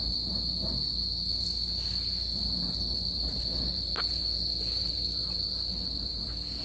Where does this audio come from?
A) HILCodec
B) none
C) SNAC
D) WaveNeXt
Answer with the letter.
B